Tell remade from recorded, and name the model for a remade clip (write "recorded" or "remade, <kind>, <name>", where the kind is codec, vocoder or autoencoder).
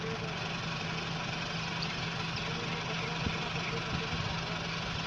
recorded